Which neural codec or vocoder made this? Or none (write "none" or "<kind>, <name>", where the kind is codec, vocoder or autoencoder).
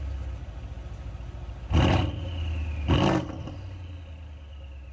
none